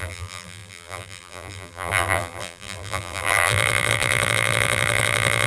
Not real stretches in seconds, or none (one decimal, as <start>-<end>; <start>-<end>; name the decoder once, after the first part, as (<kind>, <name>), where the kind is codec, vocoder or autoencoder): 0.0-5.5 (vocoder, BigVGAN v2)